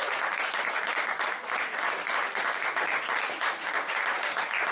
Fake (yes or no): no